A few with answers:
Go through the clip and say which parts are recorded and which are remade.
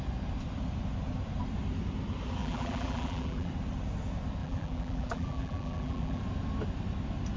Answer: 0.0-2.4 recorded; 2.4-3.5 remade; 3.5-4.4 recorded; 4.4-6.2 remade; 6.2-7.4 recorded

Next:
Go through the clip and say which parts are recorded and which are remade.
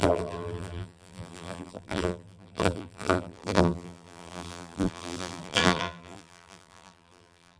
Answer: 0.0-7.6 remade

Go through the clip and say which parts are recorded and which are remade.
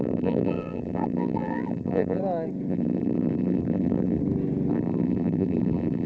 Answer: 0.0-2.2 remade; 2.2-2.7 recorded; 2.7-4.2 remade; 4.2-4.7 recorded; 4.7-6.1 remade